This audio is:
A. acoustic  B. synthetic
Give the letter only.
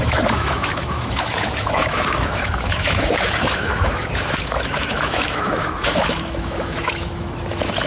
B